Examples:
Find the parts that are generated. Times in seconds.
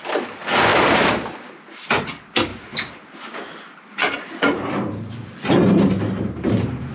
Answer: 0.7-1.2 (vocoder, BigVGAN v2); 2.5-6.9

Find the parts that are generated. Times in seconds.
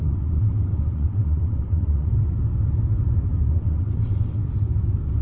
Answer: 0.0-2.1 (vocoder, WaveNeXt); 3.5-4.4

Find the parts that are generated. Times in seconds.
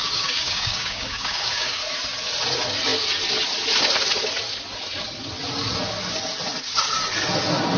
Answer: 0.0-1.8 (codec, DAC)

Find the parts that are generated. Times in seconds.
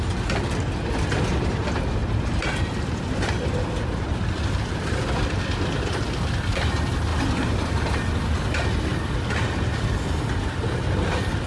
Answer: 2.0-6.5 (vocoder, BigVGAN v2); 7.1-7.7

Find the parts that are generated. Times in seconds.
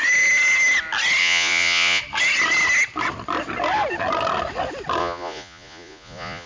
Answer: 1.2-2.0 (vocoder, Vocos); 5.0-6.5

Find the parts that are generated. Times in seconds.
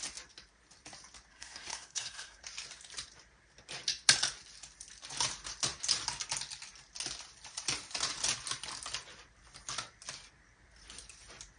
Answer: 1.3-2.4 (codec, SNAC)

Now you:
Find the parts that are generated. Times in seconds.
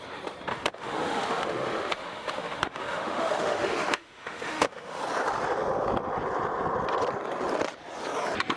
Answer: 0.5-5.0 (autoencoder, DAC-VAE)